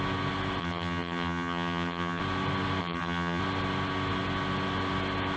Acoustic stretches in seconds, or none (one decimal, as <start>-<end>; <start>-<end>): 0.0-0.6; 2.2-2.8; 3.4-5.4